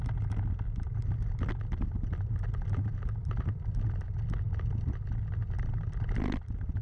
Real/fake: real